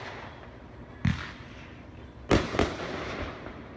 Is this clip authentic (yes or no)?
yes